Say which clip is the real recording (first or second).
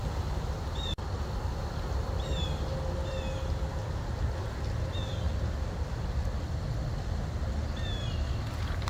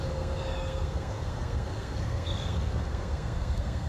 first